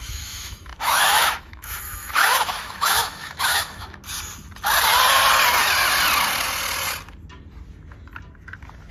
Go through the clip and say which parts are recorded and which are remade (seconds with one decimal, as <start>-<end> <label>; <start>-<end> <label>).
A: 0.0-4.0 remade; 4.0-8.9 recorded